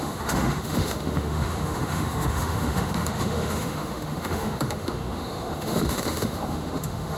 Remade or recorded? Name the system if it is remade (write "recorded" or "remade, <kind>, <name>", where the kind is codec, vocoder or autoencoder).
remade, autoencoder, DAC-VAE